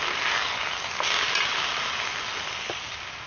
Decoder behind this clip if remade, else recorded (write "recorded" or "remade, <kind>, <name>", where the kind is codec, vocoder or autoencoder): recorded